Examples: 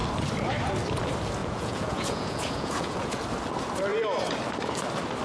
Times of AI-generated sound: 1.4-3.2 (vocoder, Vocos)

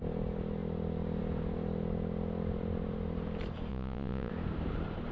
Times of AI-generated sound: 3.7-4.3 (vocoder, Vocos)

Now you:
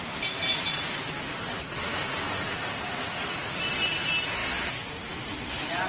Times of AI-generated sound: none

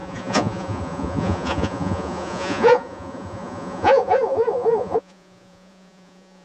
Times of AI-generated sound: 0.0-6.4 (vocoder, Vocos)

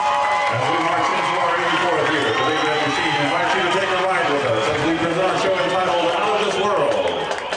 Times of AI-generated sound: none

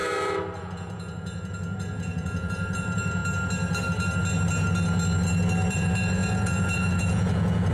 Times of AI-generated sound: 0.6-3.2 (vocoder, Vocos); 5.7-7.7

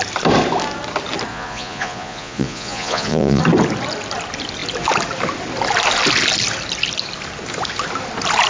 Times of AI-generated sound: 1.3-3.4 (vocoder, Vocos)

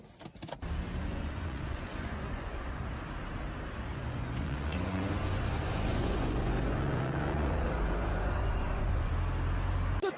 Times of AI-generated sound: 1.1-2.8 (vocoder, Vocos); 3.9-9.1